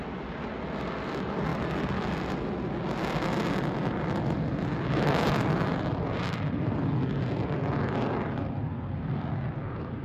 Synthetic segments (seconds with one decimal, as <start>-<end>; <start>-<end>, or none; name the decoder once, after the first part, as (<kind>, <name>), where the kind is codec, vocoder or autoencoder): none